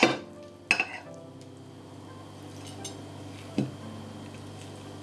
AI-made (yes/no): no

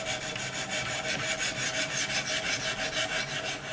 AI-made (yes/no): no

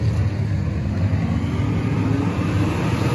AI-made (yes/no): no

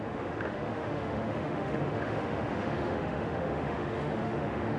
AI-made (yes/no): yes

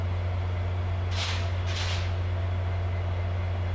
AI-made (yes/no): no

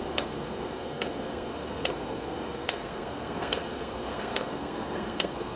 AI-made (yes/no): yes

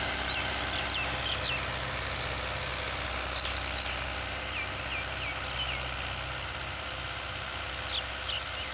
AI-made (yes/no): no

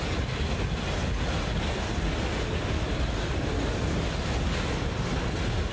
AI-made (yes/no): no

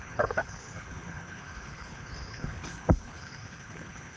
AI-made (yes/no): yes